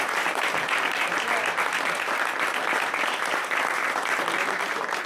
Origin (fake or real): real